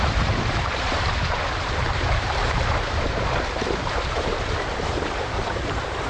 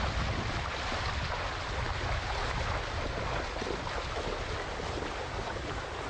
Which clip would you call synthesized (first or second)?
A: first